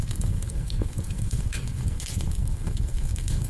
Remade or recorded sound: remade